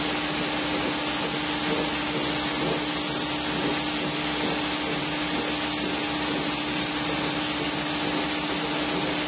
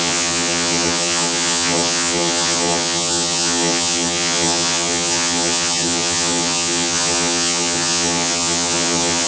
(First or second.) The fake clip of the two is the second